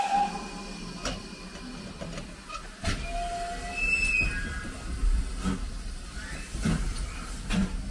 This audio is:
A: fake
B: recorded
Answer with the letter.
B